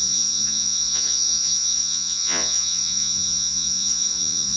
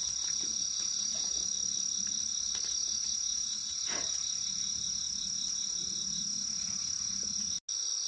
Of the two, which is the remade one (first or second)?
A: first